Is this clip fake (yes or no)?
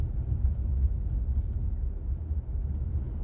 no